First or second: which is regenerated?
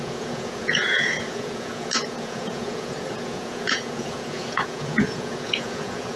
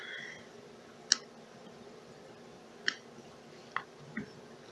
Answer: first